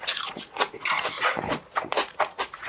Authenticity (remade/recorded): remade